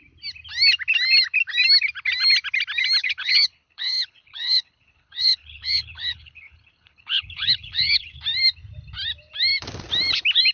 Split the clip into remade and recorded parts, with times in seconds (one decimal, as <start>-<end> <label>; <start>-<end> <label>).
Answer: 0.0-3.0 recorded; 3.0-8.2 remade; 8.2-10.5 recorded